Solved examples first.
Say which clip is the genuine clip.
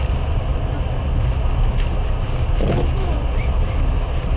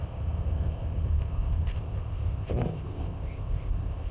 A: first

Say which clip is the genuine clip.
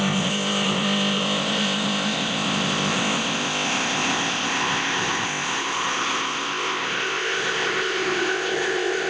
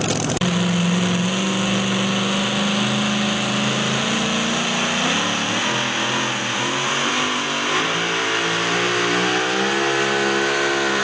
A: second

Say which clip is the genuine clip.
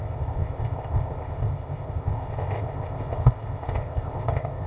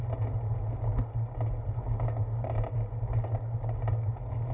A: second